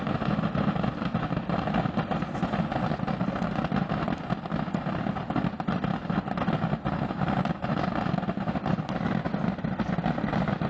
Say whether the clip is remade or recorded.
recorded